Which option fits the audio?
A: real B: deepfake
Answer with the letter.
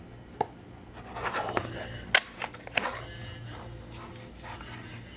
A